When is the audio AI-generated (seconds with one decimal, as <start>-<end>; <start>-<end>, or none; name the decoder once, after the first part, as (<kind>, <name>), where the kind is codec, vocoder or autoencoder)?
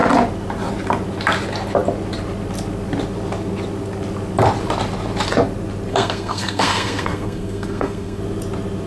5.9-8.2 (codec, SNAC)